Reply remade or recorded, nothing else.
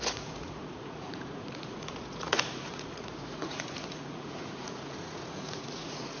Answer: remade